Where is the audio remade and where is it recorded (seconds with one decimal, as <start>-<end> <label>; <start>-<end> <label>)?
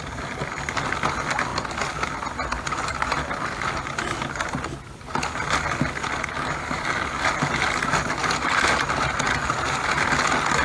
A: 0.0-10.6 recorded